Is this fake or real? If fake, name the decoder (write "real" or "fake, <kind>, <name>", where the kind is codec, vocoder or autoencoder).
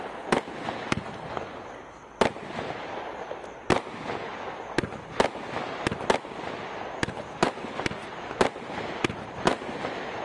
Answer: real